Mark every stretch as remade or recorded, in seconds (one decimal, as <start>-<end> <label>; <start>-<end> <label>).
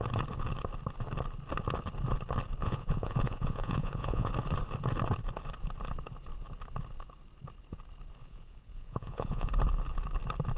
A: 0.0-2.6 recorded; 2.6-4.3 remade; 4.3-8.2 recorded; 8.2-9.5 remade; 9.5-10.6 recorded